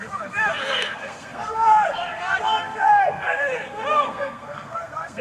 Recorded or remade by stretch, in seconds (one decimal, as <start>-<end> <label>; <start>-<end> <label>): 0.0-5.2 remade